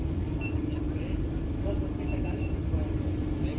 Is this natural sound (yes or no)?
yes